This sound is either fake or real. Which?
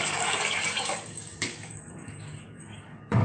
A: fake